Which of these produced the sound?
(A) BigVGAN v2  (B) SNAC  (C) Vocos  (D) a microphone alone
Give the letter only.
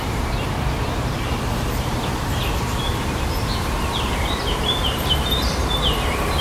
A